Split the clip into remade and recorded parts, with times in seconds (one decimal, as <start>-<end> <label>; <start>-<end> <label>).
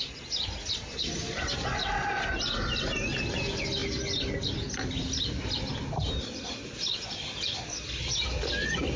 0.0-9.0 recorded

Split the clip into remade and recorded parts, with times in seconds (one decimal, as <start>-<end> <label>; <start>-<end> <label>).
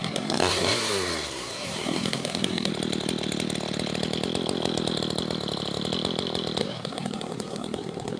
0.0-2.7 remade; 2.7-6.6 recorded; 6.6-8.2 remade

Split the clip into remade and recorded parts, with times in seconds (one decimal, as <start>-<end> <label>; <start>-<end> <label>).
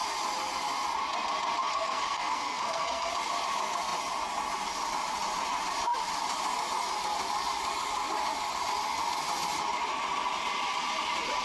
0.0-1.6 recorded; 1.6-3.1 remade; 3.1-11.4 recorded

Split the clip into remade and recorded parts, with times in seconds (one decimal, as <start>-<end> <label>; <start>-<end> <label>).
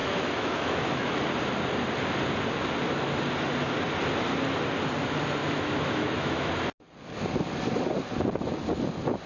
0.0-1.2 remade; 1.2-5.4 recorded; 5.4-6.5 remade; 6.5-9.3 recorded